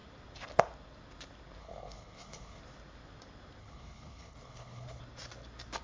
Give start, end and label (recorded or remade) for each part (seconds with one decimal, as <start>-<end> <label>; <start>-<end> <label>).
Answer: 0.0-1.6 recorded; 1.6-2.6 remade; 2.6-3.6 recorded; 3.6-5.0 remade; 5.0-5.8 recorded